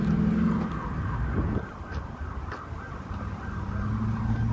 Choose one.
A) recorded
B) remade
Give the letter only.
A